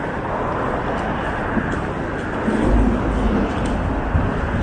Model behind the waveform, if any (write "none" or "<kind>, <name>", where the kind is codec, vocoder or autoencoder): none